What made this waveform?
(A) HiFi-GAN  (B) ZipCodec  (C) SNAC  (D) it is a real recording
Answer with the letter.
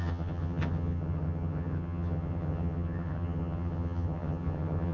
A